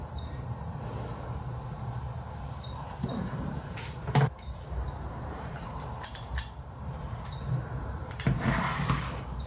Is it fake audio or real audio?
fake